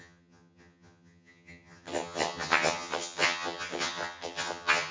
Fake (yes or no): yes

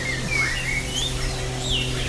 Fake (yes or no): no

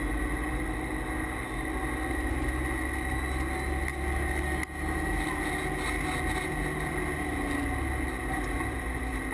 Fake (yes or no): no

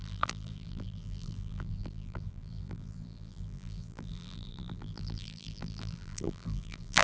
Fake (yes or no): yes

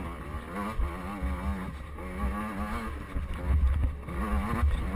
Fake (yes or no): no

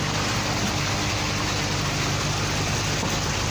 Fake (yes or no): no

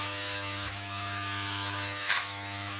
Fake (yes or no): yes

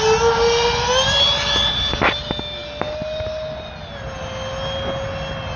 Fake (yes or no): no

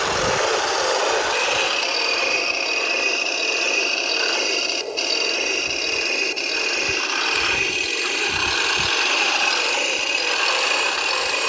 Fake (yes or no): yes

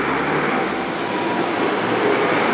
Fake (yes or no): no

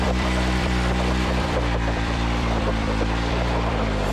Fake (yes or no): yes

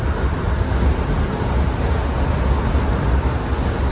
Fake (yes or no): no